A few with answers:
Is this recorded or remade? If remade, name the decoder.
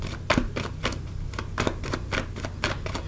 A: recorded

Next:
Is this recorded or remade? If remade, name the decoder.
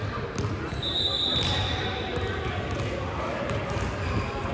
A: recorded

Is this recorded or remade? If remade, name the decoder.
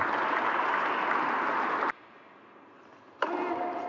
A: recorded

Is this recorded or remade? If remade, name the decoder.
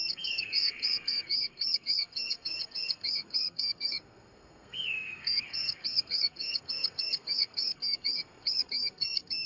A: remade, codec, SNAC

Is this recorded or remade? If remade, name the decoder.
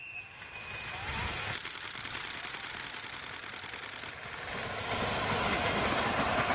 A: recorded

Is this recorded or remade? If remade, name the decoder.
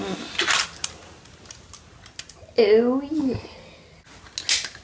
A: recorded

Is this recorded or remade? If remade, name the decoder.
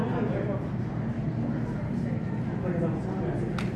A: recorded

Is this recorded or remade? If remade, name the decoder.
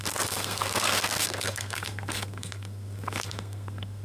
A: remade, codec, SNAC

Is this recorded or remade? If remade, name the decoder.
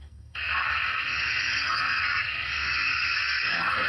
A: remade, codec, SNAC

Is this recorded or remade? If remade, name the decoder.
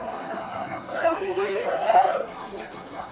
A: remade, codec, SNAC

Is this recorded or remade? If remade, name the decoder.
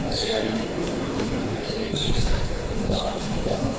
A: remade, codec, SNAC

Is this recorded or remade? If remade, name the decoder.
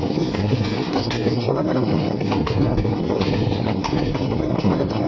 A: remade, codec, SNAC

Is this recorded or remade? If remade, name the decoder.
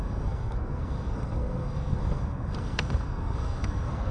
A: remade, codec, SNAC